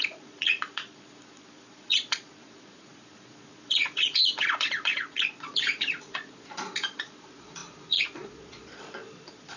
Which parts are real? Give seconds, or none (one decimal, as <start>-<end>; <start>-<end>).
none